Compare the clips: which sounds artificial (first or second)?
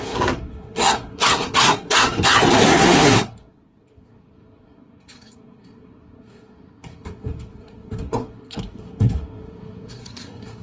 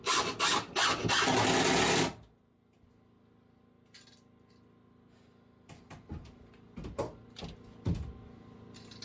first